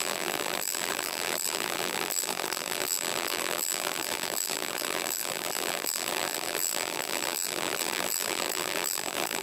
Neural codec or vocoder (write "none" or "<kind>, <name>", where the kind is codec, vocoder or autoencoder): vocoder, BigVGAN v2